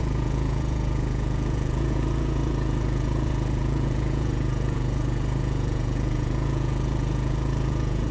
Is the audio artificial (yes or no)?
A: yes